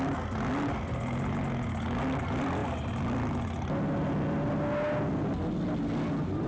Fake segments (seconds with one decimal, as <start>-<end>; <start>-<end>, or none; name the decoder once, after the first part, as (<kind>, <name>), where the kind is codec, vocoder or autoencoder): none